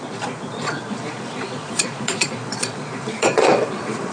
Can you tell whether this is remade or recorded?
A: remade